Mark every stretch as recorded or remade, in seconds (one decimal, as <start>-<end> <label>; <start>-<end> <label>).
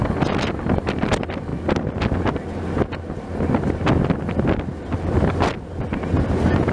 0.0-6.7 recorded